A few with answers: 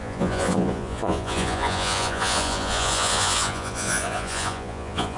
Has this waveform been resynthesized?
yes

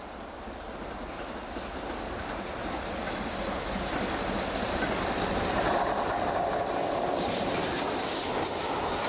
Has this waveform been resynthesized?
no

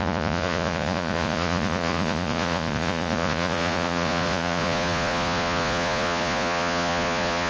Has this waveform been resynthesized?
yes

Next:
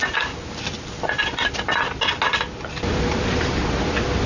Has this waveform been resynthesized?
no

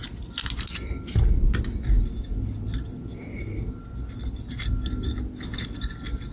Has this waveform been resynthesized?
no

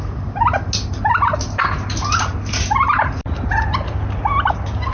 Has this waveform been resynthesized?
no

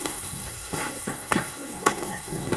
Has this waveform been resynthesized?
yes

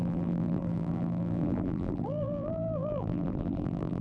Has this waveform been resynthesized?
yes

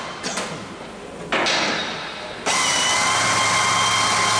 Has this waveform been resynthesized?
no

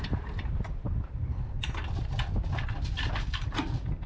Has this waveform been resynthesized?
no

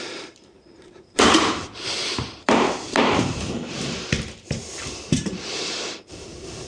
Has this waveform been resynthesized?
yes